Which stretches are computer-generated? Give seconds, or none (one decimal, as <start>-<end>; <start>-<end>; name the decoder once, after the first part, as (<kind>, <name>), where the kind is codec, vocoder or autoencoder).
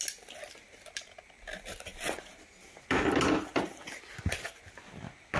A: none